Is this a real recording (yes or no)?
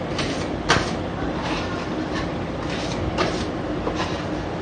yes